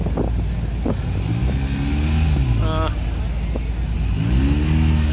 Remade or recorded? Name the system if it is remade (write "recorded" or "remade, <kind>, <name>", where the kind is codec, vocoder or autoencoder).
recorded